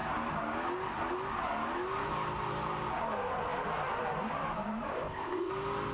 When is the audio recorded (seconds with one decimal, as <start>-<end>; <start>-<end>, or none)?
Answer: 0.0-4.9; 5.5-5.9

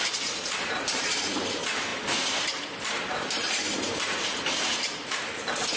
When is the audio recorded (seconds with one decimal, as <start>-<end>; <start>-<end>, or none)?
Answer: none

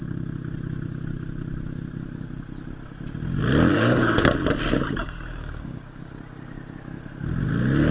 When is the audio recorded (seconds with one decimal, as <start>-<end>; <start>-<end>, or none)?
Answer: 0.0-3.7; 4.3-5.0; 6.2-7.9

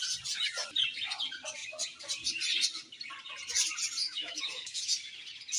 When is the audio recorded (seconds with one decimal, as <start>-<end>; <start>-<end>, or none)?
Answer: 0.0-4.0; 4.8-5.6

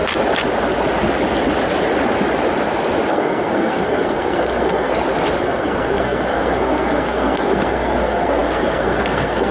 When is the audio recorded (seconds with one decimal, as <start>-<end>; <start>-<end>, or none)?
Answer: 0.0-3.1; 4.9-5.4